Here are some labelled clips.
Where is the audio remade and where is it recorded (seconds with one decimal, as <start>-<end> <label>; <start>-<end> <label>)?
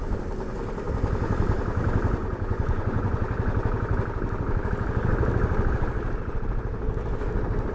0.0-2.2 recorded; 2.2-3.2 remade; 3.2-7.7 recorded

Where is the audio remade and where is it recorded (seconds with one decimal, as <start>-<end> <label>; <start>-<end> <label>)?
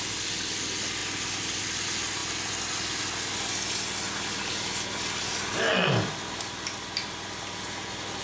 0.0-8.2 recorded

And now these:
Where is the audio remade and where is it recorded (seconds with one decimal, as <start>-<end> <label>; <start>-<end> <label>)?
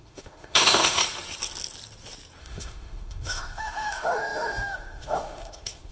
0.0-1.0 remade; 1.0-2.4 recorded; 2.4-5.9 remade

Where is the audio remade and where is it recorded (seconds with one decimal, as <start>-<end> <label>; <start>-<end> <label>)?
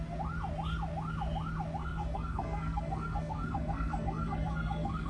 0.0-1.8 recorded; 1.8-5.1 remade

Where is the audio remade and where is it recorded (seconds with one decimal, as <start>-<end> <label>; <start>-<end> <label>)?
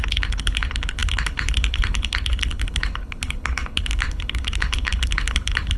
0.0-5.8 remade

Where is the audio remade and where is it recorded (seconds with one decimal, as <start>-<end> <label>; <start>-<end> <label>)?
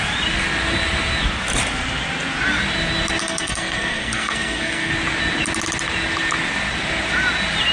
0.0-3.2 recorded; 3.2-4.9 remade; 4.9-7.7 recorded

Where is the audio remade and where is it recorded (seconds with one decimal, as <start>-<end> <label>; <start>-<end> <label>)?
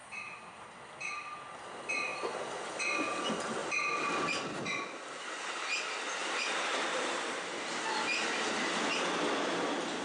0.0-1.4 remade; 1.4-3.6 recorded; 3.6-4.7 remade; 4.7-6.2 recorded; 6.2-7.8 remade; 7.8-10.0 recorded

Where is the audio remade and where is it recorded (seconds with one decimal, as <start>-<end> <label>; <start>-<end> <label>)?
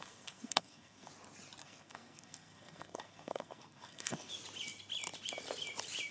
0.0-1.1 remade; 1.1-1.6 recorded; 1.6-4.3 remade; 4.3-6.1 recorded